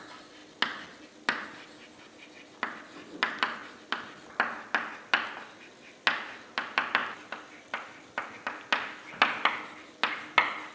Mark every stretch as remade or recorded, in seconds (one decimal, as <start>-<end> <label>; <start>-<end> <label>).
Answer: 0.0-7.0 recorded; 7.0-8.2 remade; 8.2-10.7 recorded